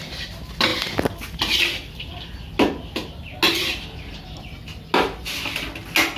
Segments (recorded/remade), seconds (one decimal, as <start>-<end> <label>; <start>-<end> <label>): 0.0-6.2 recorded